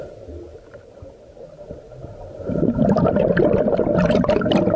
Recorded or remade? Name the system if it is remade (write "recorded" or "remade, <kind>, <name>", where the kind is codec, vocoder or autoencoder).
recorded